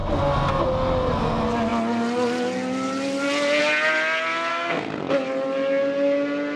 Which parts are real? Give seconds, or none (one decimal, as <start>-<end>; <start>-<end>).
0.0-4.5; 5.0-6.6